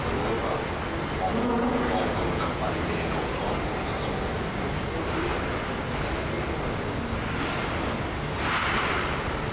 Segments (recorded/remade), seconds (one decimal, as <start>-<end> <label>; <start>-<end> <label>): 0.0-1.3 recorded; 1.3-3.7 remade; 3.7-9.5 recorded

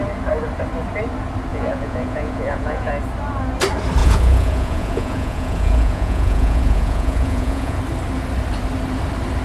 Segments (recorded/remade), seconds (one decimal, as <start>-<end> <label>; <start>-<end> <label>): 0.0-1.5 recorded; 1.5-2.9 remade; 2.9-4.0 recorded; 4.0-7.8 remade; 7.8-9.4 recorded

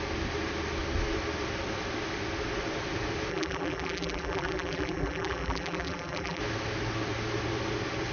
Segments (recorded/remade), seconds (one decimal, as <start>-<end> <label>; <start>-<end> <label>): 0.0-3.3 recorded; 3.3-6.4 remade; 6.4-8.1 recorded